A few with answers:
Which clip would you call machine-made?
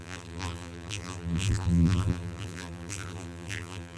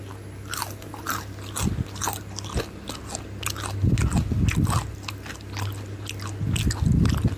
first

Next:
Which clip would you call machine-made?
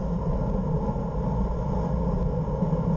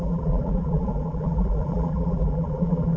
second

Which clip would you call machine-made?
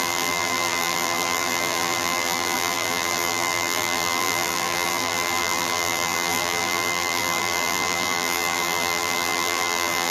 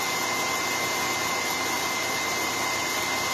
first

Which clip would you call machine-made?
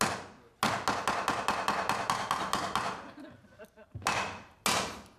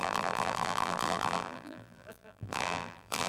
second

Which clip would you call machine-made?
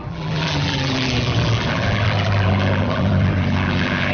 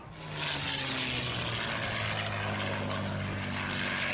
first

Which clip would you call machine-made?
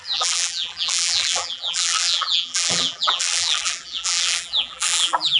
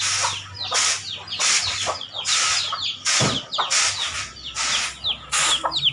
first